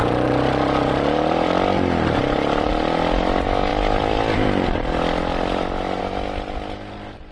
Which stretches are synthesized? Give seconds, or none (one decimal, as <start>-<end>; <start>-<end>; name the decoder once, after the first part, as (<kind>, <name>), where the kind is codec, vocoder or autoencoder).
0.0-2.7 (vocoder, BigVGAN v2); 3.7-6.0